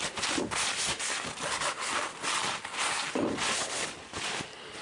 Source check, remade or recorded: recorded